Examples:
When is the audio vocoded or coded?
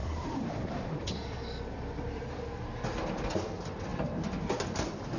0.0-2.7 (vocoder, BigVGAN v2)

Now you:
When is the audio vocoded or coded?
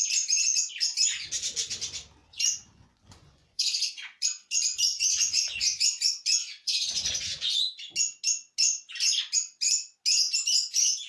2.2-7.2 (vocoder, Vocos)